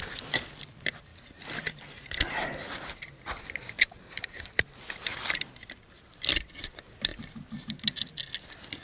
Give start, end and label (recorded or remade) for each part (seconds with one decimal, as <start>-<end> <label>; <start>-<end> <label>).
0.0-1.1 remade; 1.1-4.9 recorded; 4.9-7.1 remade; 7.1-8.4 recorded; 8.4-8.8 remade

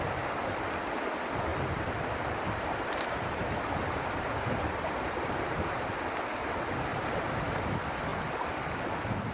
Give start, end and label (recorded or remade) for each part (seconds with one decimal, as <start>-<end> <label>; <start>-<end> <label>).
0.0-1.5 recorded; 1.5-5.8 remade; 5.8-6.9 recorded; 6.9-7.6 remade; 7.6-9.3 recorded

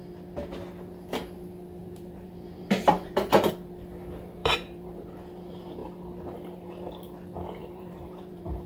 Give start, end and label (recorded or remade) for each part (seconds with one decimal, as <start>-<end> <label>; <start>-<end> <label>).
0.0-1.8 recorded; 1.8-3.5 remade; 3.5-4.4 recorded; 4.4-5.0 remade; 5.0-7.6 recorded; 7.6-8.7 remade

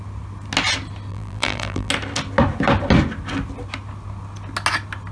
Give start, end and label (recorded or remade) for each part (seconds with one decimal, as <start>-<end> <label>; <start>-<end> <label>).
0.0-1.1 recorded; 1.1-1.9 remade; 1.9-5.1 recorded

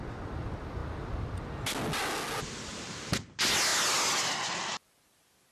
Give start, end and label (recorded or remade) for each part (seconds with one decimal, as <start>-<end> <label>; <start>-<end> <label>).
0.0-5.5 recorded

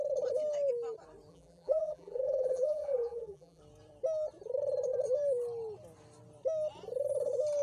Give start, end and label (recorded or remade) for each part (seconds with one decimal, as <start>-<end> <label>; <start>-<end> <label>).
0.0-1.3 recorded; 1.3-3.6 remade; 3.6-7.6 recorded